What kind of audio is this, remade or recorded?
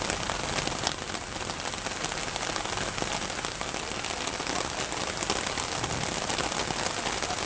recorded